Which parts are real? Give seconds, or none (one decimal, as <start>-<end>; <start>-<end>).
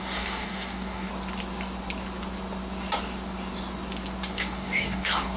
1.1-4.3